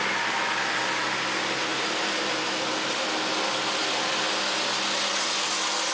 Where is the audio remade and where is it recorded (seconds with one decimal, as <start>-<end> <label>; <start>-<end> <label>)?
0.0-5.9 recorded